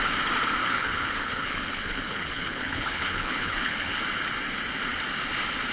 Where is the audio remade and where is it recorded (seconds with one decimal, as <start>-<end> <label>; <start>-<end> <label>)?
0.0-0.6 recorded; 0.6-4.0 remade; 4.0-5.7 recorded